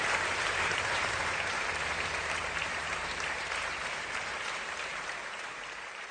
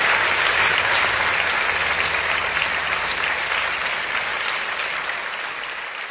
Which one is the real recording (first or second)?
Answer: second